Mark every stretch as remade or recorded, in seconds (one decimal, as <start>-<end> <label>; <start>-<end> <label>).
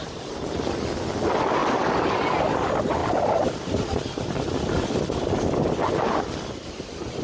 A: 0.0-3.0 recorded; 3.0-6.7 remade; 6.7-7.2 recorded